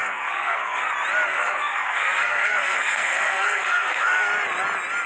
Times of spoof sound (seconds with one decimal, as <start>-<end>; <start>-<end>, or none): 0.0-0.9; 1.3-4.3